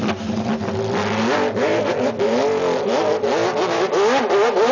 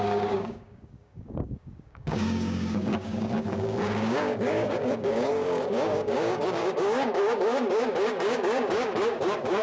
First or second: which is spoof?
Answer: second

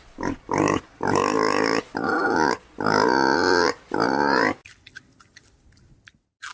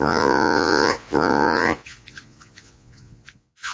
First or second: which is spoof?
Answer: second